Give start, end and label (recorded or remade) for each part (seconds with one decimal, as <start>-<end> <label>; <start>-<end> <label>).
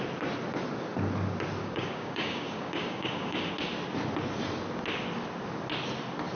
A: 0.0-1.6 recorded; 1.6-3.5 remade; 3.5-6.4 recorded